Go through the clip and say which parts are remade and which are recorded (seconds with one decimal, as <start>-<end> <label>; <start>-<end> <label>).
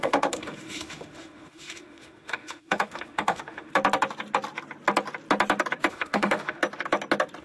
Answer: 0.0-3.7 remade; 3.7-5.9 recorded; 5.9-6.6 remade; 6.6-7.4 recorded